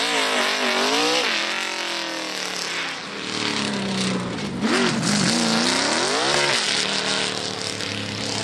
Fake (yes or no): no